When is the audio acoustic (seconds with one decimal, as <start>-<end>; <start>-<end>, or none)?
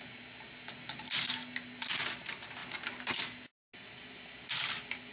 0.0-5.1